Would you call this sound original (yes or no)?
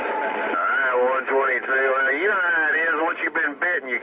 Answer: yes